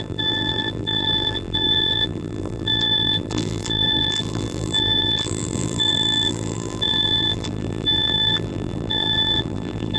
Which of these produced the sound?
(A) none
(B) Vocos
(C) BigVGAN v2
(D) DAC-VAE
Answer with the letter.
C